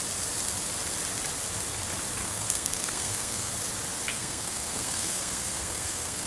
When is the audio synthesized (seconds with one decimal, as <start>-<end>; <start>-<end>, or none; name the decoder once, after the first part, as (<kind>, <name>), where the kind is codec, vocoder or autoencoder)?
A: 2.2-3.5 (codec, SNAC); 4.1-6.3